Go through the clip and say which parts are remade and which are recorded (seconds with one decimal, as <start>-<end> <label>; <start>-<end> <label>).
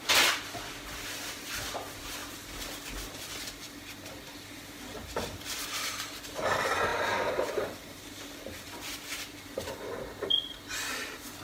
0.0-11.4 recorded